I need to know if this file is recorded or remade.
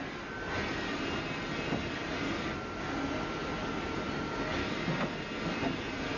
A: recorded